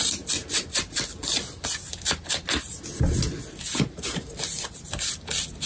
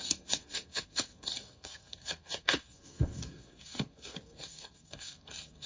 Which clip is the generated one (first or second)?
second